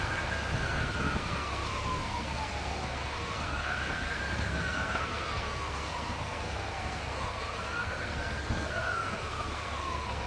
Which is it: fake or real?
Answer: fake